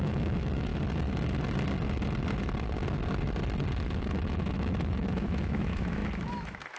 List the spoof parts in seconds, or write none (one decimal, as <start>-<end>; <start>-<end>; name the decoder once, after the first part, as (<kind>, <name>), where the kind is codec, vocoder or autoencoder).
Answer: 0.0-0.7 (autoencoder, DAC-VAE); 4.0-6.8